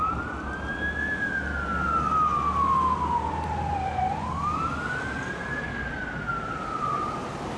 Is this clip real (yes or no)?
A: yes